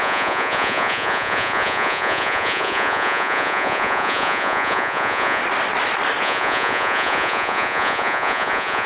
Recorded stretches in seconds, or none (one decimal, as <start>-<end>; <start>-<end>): 5.4-6.2